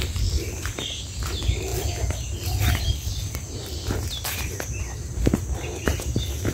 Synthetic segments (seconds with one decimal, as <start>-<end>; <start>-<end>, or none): none